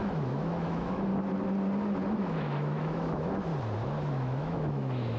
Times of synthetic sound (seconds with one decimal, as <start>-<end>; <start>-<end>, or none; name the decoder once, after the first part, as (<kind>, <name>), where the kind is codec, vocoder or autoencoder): 0.0-1.1 (autoencoder, DAC-VAE); 2.1-3.5; 4.1-5.2